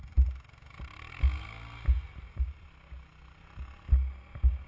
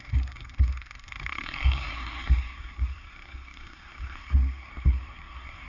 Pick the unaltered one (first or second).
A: first